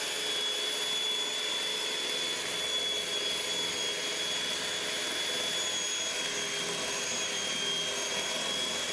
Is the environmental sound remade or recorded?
recorded